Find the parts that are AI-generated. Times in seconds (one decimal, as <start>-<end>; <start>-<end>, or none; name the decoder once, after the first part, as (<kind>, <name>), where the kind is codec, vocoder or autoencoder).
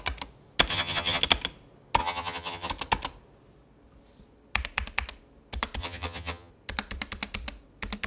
0.7-1.2 (vocoder, HiFi-GAN); 2.0-2.7; 5.8-6.5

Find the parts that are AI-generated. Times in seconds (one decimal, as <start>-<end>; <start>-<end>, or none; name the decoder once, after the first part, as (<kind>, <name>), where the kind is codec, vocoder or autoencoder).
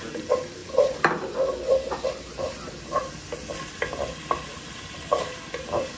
none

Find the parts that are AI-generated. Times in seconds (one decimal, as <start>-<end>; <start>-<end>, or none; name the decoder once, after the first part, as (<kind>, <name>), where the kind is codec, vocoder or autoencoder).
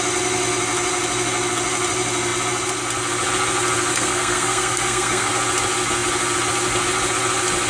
3.9-5.3 (codec, SNAC)